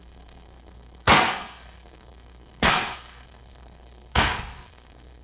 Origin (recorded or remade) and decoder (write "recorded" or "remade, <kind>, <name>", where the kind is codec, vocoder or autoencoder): remade, codec, SNAC